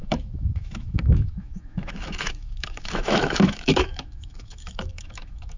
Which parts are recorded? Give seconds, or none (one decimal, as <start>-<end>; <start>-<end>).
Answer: none